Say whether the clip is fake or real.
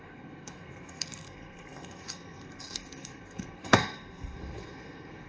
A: fake